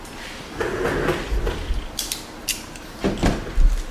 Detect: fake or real fake